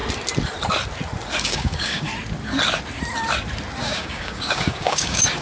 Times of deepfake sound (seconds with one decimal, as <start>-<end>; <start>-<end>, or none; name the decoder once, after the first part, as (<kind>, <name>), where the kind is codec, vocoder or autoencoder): 1.4-2.1 (codec, DAC); 3.8-5.4